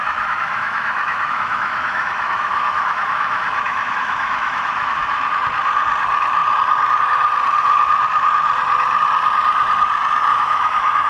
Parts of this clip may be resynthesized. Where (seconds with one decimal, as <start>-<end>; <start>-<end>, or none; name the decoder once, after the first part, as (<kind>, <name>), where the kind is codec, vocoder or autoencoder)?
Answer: 0.0-5.3 (autoencoder, DAC-VAE); 10.3-11.1